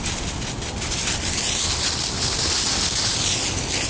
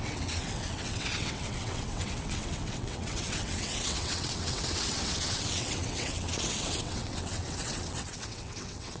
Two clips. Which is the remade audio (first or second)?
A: second